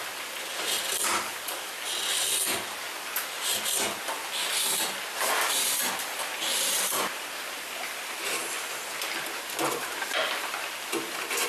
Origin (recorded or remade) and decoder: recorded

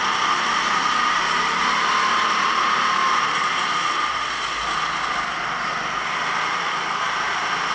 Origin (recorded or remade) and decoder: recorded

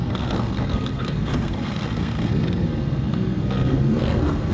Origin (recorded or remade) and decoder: remade, codec, SNAC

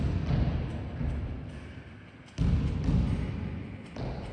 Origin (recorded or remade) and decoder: recorded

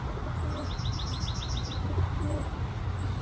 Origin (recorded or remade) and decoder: recorded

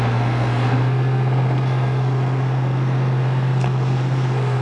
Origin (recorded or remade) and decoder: remade, codec, SNAC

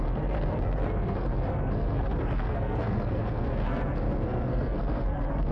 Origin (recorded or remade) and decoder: remade, codec, SNAC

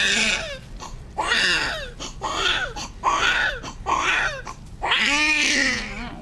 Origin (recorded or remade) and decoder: recorded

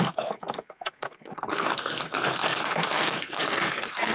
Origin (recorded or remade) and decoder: remade, codec, SNAC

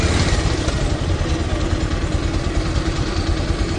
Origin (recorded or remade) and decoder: recorded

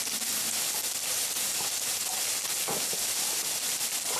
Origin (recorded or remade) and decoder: recorded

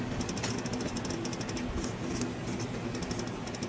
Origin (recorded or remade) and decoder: recorded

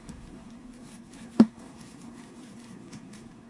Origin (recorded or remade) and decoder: remade, codec, SNAC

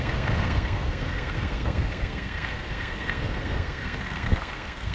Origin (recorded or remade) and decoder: remade, codec, SNAC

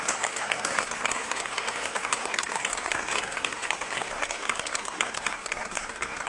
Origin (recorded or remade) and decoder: remade, codec, SNAC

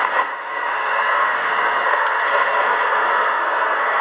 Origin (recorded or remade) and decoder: remade, codec, SNAC